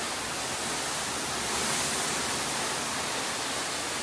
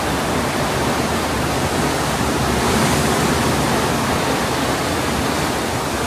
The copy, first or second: second